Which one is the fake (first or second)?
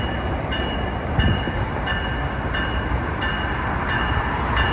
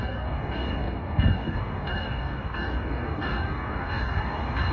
second